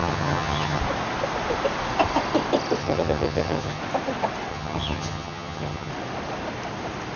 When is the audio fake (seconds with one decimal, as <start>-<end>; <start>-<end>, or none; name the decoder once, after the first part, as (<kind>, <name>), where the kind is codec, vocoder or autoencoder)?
0.0-0.8 (vocoder, HiFi-GAN); 2.8-3.8; 4.5-5.9